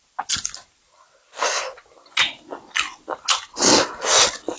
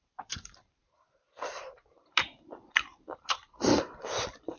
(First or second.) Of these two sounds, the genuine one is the first